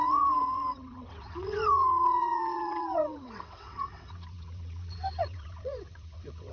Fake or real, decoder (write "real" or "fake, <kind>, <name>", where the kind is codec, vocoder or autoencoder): fake, vocoder, WaveNeXt